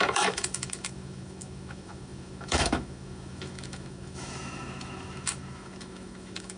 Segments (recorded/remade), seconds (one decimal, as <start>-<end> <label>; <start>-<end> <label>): 0.0-6.6 remade